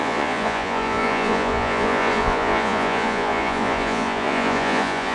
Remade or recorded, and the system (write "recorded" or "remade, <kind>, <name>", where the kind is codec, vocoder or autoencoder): remade, vocoder, Vocos